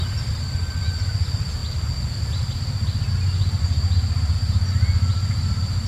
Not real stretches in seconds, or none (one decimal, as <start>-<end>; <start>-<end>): none